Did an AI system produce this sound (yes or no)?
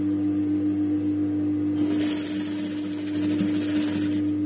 no